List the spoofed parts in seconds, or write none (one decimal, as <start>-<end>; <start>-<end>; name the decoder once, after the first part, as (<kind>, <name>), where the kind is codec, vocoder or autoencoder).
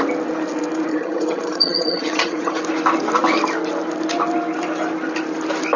0.9-2.6 (vocoder, HiFi-GAN)